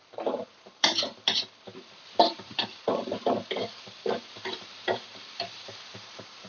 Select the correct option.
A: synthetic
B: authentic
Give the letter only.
A